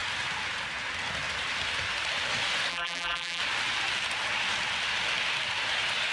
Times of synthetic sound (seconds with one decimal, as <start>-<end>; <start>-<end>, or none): 2.7-3.4